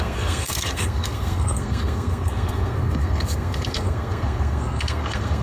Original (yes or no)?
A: no